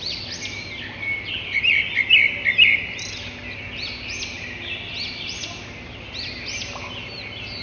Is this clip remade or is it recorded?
recorded